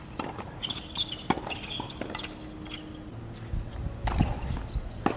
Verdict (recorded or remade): recorded